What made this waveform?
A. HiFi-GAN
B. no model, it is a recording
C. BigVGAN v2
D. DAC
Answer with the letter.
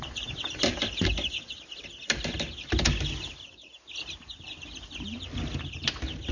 B